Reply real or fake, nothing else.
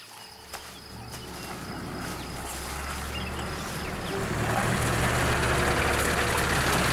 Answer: real